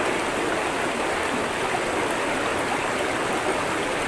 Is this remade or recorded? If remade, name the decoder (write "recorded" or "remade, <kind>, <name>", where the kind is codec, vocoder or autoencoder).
recorded